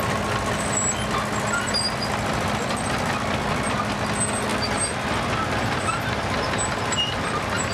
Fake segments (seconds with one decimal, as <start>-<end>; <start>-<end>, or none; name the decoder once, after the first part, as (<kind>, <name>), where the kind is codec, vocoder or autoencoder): none